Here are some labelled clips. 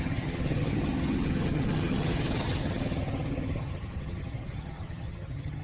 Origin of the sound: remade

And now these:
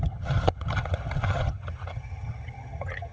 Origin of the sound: remade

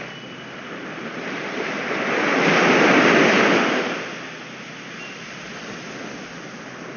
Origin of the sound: recorded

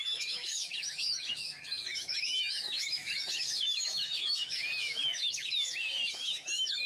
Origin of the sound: remade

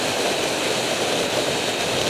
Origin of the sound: recorded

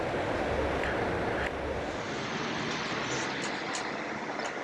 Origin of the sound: recorded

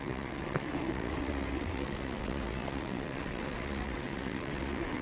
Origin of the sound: remade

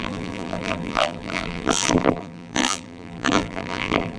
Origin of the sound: remade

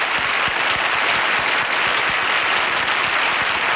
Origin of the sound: recorded